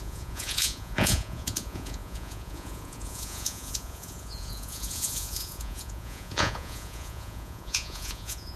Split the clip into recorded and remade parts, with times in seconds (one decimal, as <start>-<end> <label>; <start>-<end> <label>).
0.0-8.6 remade